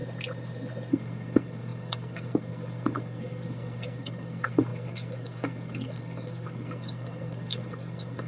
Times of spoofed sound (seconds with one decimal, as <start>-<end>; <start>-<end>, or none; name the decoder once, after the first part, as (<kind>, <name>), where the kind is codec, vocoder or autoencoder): 0.9-8.3 (codec, SNAC)